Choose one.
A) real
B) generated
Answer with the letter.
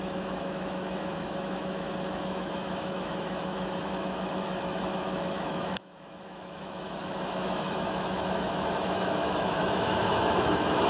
B